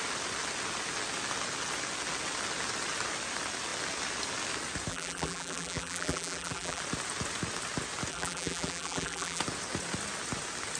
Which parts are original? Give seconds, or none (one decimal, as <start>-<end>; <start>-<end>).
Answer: 0.0-4.9; 6.8-8.1; 9.4-10.8